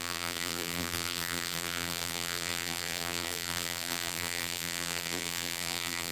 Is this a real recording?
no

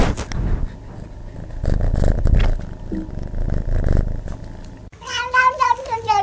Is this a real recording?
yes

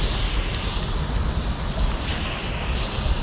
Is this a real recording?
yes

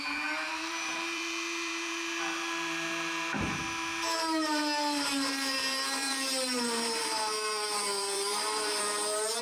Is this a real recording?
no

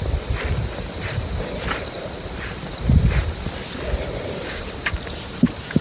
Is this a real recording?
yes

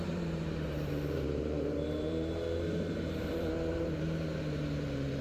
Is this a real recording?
no